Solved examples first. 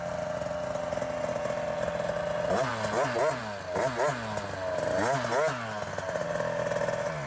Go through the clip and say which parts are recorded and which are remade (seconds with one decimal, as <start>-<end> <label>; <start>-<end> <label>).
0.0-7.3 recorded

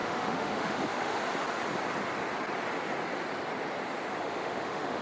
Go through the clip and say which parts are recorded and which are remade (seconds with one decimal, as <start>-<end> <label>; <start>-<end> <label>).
0.0-1.2 remade; 1.2-4.2 recorded; 4.2-5.0 remade

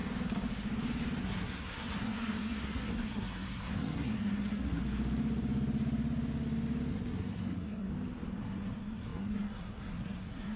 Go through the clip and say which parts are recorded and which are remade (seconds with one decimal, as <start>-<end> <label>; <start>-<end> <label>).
0.0-1.2 recorded; 1.2-4.8 remade; 4.8-6.9 recorded; 6.9-7.9 remade; 7.9-8.4 recorded; 8.4-10.6 remade

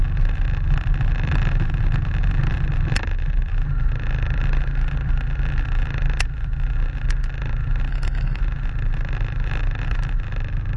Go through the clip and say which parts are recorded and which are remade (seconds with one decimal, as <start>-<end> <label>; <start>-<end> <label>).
0.0-7.9 recorded; 7.9-8.4 remade; 8.4-10.8 recorded